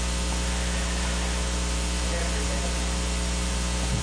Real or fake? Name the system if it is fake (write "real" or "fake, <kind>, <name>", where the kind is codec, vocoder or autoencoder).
real